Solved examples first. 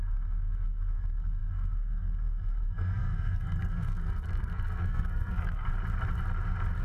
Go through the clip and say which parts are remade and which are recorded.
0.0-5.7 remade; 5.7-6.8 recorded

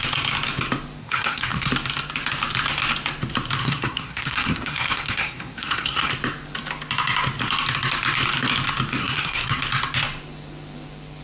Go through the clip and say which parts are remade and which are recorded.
0.0-1.0 recorded; 1.0-1.7 remade; 1.7-3.6 recorded; 3.6-6.1 remade; 6.1-9.0 recorded; 9.0-9.6 remade; 9.6-11.2 recorded